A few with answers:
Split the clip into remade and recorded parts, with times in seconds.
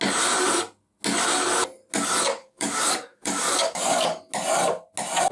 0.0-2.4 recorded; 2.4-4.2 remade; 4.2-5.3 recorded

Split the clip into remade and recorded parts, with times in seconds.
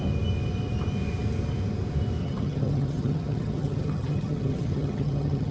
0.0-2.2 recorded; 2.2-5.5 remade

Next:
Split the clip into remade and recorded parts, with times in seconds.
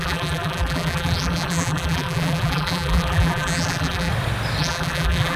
0.0-4.1 remade; 4.1-4.6 recorded; 4.6-5.4 remade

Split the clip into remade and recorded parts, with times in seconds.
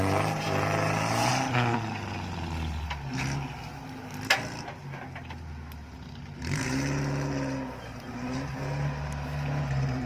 0.0-1.3 remade; 1.3-5.9 recorded; 5.9-10.1 remade